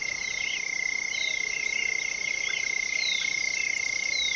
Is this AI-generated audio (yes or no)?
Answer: no